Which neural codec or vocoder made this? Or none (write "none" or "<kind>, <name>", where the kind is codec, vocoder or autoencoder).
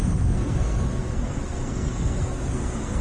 codec, SNAC